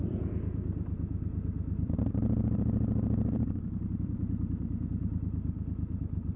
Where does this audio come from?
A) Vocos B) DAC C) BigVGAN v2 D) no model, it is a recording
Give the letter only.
C